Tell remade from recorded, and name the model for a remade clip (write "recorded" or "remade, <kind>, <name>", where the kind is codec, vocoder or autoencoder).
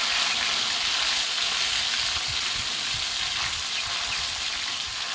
recorded